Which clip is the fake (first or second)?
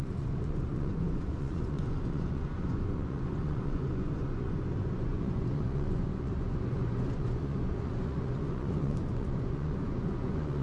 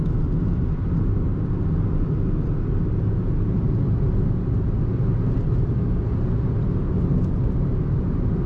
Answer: first